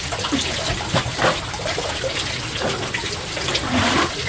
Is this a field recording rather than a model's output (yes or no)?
yes